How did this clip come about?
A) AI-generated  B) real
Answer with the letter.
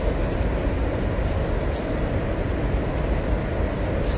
B